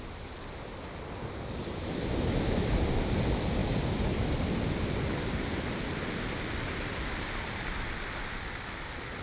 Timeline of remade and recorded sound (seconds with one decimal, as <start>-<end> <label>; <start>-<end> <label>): 0.0-3.6 recorded; 3.6-4.3 remade; 4.3-5.5 recorded; 5.5-6.0 remade; 6.0-9.2 recorded